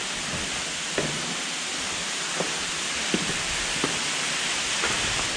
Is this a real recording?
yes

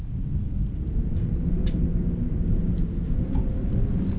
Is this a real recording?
yes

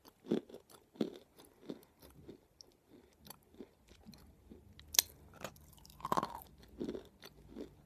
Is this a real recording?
yes